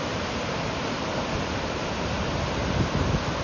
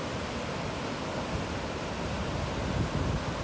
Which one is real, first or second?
second